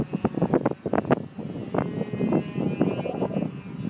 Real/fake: real